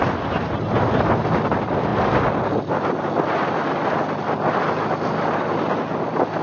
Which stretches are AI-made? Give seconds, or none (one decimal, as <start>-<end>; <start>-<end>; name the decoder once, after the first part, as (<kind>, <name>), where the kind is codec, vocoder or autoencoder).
none